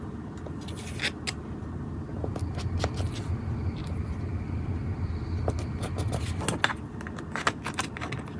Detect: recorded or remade recorded